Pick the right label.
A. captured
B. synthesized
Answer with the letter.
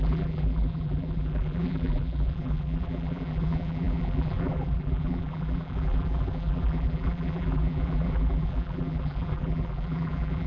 B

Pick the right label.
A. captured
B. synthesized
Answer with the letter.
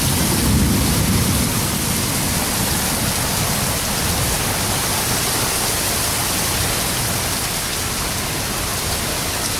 A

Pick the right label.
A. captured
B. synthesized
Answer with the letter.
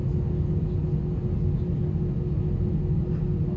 A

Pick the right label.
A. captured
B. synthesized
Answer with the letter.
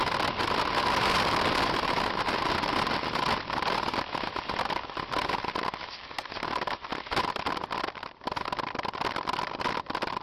A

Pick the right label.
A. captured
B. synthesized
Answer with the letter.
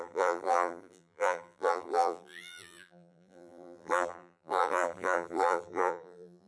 B